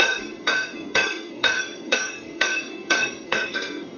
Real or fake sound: fake